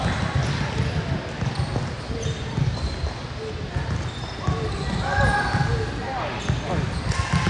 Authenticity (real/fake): real